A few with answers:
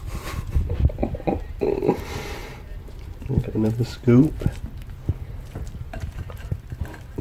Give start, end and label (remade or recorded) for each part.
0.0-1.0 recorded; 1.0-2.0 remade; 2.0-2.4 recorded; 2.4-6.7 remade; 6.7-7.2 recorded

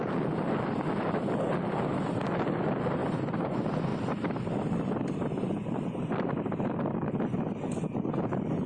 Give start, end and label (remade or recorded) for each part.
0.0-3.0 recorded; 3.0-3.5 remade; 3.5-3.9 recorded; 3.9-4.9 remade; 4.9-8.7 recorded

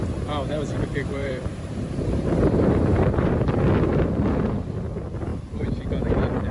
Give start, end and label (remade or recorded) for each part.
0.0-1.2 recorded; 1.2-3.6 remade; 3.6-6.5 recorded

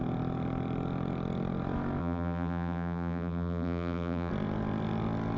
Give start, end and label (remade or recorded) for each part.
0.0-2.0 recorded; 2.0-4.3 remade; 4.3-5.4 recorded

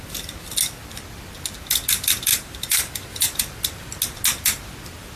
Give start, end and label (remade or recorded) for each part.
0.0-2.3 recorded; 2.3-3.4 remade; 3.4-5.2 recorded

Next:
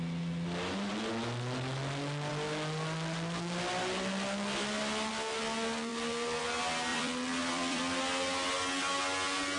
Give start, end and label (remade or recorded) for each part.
0.0-5.9 recorded; 5.9-6.4 remade; 6.4-6.9 recorded; 6.9-7.8 remade; 7.8-9.6 recorded

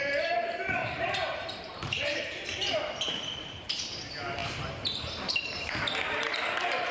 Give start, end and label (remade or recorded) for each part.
0.0-0.8 recorded; 0.8-3.9 remade; 3.9-4.4 recorded; 4.4-6.0 remade; 6.0-6.9 recorded